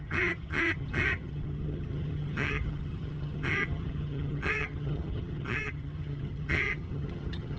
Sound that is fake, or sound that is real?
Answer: fake